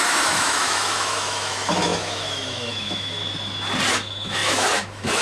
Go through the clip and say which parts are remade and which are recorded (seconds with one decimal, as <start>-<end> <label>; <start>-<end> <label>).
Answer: 0.0-3.2 remade; 3.2-3.9 recorded; 3.9-5.2 remade